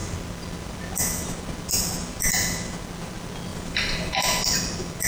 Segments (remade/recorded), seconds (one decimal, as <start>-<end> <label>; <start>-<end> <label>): 0.0-3.5 recorded; 3.5-4.0 remade; 4.0-5.1 recorded